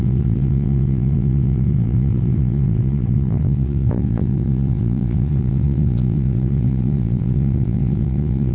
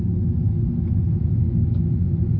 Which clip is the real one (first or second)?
second